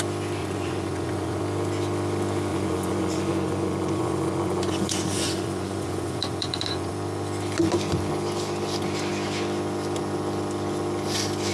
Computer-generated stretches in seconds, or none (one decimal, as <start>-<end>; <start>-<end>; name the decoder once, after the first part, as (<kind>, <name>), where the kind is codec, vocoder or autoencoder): 0.4-1.4 (vocoder, Vocos); 2.5-6.9